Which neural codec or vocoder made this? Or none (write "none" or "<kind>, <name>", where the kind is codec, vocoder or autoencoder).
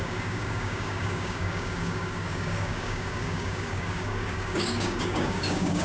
codec, DAC